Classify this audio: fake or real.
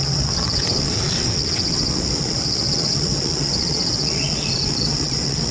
fake